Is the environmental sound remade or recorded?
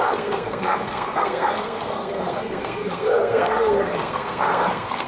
remade